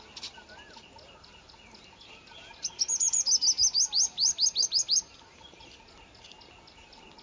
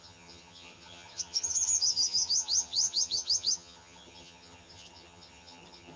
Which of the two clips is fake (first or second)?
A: second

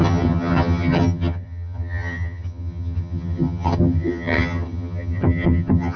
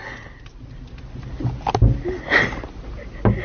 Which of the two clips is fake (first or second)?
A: first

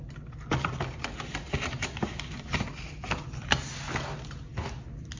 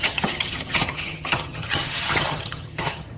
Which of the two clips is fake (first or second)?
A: second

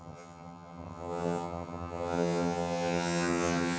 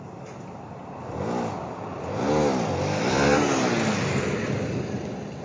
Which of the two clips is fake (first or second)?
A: first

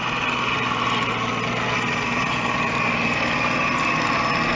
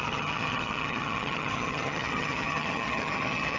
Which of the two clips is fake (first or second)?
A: second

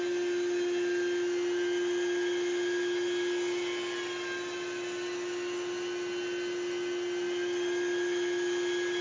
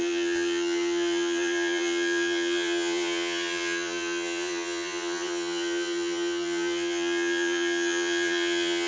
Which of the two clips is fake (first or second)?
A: second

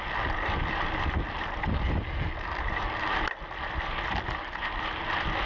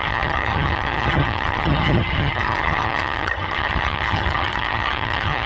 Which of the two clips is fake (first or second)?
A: second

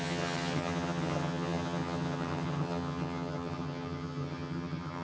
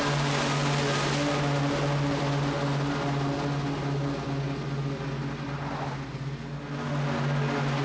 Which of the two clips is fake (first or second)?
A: first